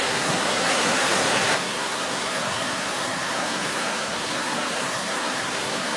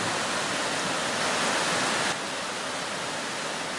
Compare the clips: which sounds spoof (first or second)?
first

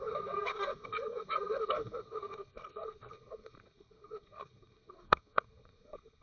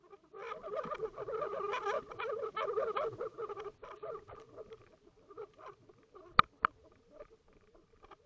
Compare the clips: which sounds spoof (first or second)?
first